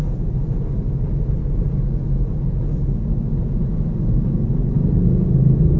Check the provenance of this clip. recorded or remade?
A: recorded